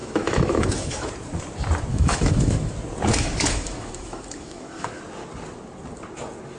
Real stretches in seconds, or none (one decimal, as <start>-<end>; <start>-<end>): 1.1-1.9; 2.7-3.1; 5.0-6.6